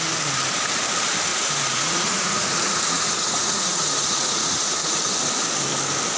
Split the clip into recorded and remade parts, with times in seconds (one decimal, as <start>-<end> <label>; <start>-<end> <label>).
0.0-1.3 recorded; 1.3-5.0 remade; 5.0-6.2 recorded